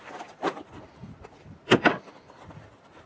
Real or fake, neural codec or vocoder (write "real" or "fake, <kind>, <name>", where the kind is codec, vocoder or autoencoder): real